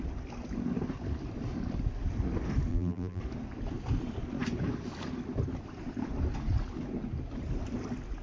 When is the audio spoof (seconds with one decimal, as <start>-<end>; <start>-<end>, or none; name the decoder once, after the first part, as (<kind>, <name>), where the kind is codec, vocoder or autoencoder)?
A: 2.7-3.2 (vocoder, BigVGAN v2)